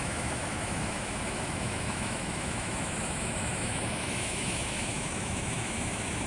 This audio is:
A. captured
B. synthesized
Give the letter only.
B